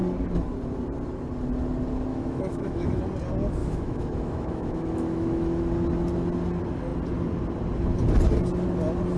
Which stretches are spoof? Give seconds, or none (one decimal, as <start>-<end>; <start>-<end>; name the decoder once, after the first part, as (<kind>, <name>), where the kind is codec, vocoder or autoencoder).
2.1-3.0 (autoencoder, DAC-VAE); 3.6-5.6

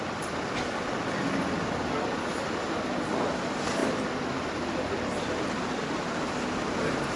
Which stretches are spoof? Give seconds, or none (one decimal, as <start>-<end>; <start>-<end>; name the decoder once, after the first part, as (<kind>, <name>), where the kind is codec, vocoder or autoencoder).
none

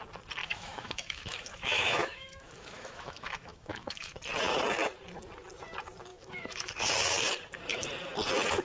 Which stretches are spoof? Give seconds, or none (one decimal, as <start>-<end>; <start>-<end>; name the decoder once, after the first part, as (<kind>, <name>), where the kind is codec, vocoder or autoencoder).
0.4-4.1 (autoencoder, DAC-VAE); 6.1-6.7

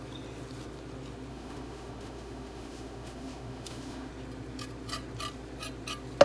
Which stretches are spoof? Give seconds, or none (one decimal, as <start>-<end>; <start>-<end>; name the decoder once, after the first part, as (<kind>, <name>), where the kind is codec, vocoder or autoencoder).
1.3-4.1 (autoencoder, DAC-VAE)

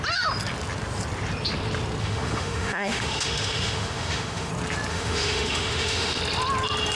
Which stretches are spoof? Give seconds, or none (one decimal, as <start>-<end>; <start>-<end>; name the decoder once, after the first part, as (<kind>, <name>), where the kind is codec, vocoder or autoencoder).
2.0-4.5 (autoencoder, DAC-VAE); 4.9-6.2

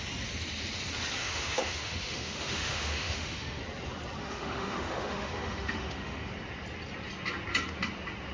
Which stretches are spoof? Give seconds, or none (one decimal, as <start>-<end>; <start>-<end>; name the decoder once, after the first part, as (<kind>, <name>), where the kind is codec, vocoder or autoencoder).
1.2-3.6 (autoencoder, DAC-VAE); 4.2-6.3